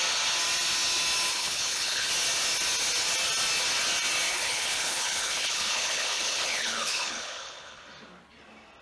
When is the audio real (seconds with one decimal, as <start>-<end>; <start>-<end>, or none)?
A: 0.0-1.3; 2.1-4.3; 7.8-8.8